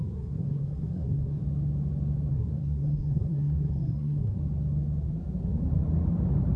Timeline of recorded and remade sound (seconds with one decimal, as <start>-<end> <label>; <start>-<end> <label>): 0.0-1.4 remade; 1.4-2.3 recorded; 2.3-4.4 remade; 4.4-6.6 recorded